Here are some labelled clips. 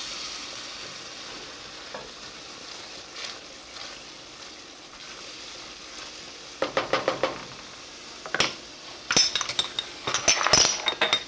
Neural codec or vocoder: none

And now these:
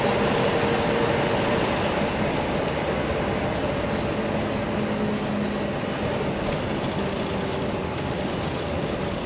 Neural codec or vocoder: none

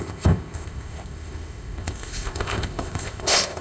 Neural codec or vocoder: codec, ZipCodec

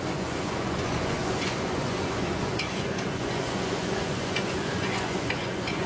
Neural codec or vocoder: vocoder, Vocos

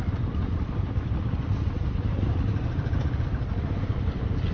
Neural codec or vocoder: none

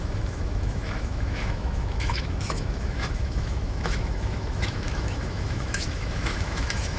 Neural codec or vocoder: autoencoder, DAC-VAE